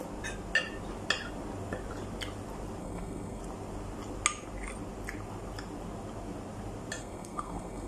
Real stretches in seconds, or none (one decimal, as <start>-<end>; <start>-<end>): 0.0-2.8; 3.4-7.0